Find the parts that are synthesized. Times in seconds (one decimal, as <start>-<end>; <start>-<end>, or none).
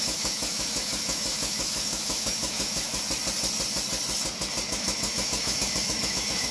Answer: 0.0-2.9; 4.7-6.5